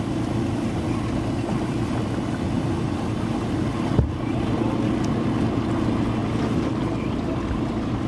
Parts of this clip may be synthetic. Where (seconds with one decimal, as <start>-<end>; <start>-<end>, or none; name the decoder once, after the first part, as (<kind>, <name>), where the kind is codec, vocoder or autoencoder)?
none